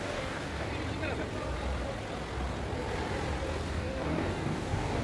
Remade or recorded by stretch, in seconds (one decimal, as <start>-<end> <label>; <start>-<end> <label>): 0.0-0.7 remade; 0.7-3.7 recorded; 3.7-5.0 remade